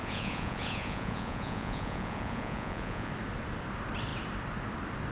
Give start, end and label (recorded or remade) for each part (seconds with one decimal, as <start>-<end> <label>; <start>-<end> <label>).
0.0-3.1 remade; 3.1-5.1 recorded